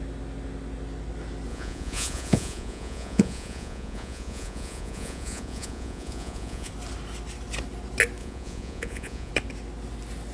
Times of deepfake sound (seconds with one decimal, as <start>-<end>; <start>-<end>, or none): 1.5-6.7; 8.2-9.3